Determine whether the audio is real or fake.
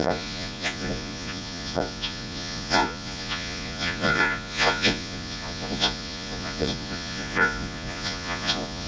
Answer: fake